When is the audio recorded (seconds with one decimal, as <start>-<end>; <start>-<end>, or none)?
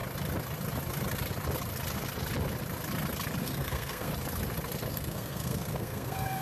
0.0-3.4; 4.1-4.9